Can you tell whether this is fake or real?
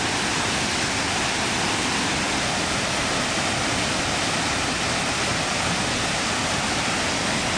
real